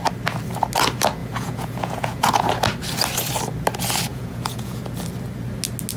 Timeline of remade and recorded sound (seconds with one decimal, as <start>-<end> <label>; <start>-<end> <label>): 0.0-1.2 recorded; 1.2-2.5 remade; 2.5-4.1 recorded; 4.1-4.8 remade; 4.8-6.0 recorded